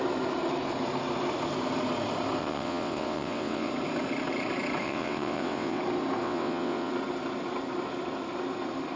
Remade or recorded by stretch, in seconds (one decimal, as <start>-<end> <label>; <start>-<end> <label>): 0.0-2.4 recorded; 2.4-3.7 remade; 3.7-4.8 recorded; 4.8-5.8 remade; 5.8-6.2 recorded; 6.2-6.9 remade; 6.9-9.0 recorded